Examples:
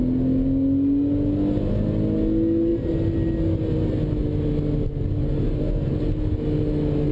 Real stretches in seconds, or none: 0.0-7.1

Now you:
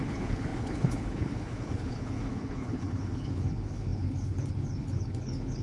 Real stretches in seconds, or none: none